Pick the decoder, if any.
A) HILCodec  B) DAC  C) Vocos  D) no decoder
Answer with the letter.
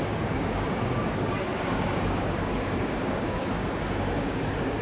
B